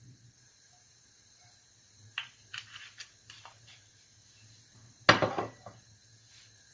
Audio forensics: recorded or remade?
recorded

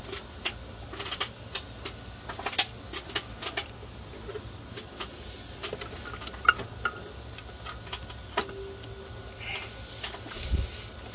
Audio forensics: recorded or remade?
recorded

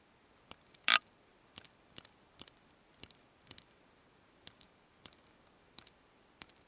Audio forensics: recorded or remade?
recorded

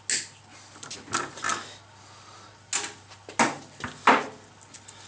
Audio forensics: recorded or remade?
recorded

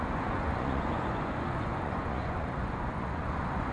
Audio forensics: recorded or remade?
remade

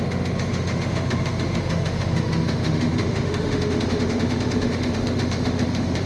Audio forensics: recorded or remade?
remade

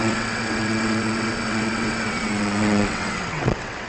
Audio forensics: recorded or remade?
remade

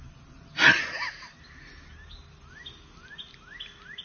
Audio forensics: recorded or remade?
recorded